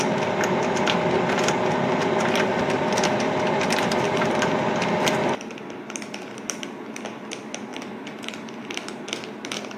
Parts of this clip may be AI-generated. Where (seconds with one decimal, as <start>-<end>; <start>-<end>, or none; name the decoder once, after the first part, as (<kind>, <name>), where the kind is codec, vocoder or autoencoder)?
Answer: 2.5-4.5 (vocoder, BigVGAN v2); 7.7-9.0